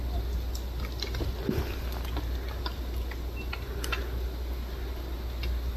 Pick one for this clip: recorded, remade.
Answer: recorded